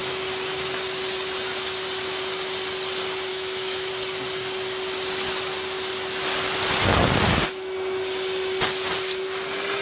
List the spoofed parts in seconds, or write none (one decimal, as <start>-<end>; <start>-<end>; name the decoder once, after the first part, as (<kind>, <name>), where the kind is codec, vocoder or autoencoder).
3.3-3.9 (autoencoder, DAC-VAE)